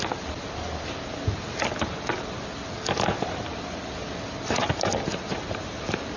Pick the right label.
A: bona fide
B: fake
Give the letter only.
A